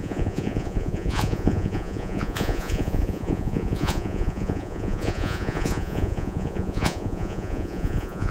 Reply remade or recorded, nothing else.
remade